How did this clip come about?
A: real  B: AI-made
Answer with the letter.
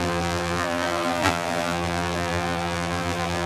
B